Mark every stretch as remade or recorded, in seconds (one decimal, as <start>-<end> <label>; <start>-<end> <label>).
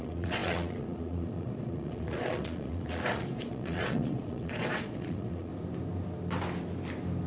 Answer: 0.0-5.5 remade; 5.5-7.3 recorded